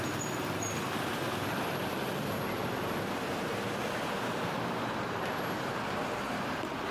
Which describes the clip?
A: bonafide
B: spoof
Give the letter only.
B